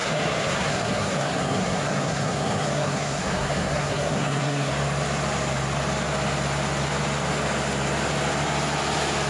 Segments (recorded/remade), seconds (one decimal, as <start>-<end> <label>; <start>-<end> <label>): 0.0-4.7 remade; 4.7-9.3 recorded